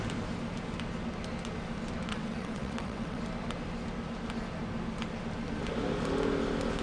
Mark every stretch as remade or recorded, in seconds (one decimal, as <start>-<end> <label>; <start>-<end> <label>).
0.0-2.1 recorded; 2.1-3.2 remade; 3.2-6.8 recorded